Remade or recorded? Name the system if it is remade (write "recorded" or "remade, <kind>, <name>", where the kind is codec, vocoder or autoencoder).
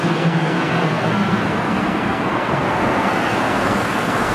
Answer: remade, codec, SNAC